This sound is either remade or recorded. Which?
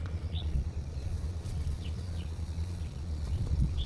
remade